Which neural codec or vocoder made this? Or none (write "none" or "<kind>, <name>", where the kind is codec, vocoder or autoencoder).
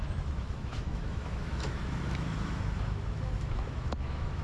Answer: autoencoder, DAC-VAE